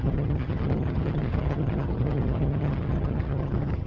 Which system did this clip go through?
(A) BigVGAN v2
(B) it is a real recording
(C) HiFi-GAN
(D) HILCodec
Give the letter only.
C